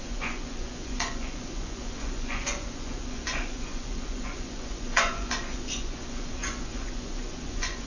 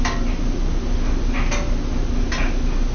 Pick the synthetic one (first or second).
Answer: first